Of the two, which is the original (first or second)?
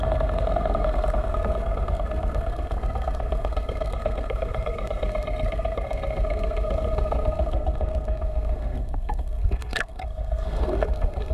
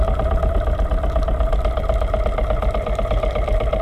second